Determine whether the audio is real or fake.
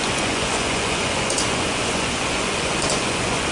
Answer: fake